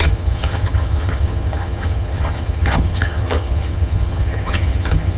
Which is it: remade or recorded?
remade